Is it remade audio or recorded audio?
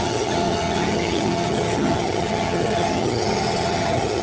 remade